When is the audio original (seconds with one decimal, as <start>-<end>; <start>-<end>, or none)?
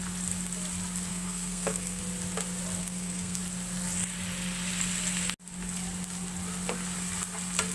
0.0-1.1; 2.0-2.8; 3.4-7.7